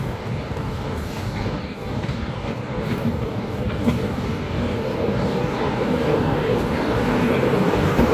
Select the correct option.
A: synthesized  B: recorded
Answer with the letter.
A